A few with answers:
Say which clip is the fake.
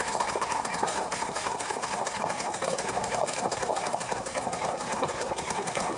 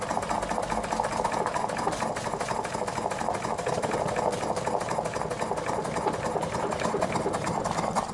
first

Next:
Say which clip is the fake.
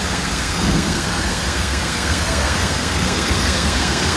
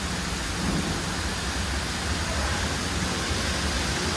first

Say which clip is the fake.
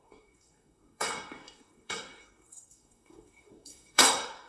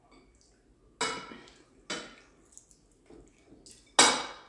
first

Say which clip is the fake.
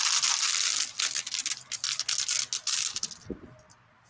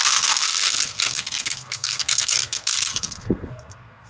second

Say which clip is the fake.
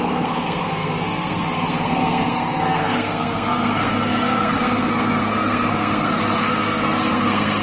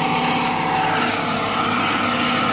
first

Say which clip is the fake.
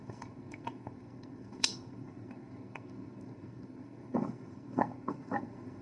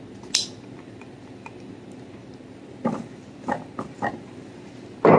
first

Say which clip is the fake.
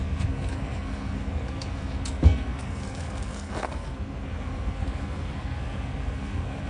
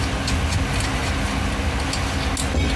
first